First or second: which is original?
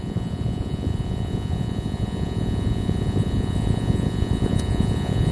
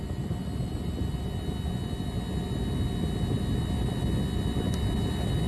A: second